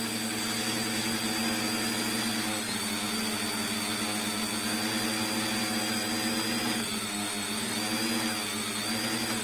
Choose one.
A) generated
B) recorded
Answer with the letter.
B